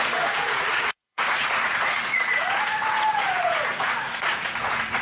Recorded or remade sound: remade